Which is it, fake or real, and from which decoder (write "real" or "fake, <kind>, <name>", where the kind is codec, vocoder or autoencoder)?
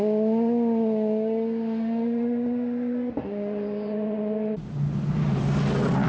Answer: real